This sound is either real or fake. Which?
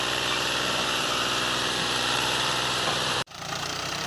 fake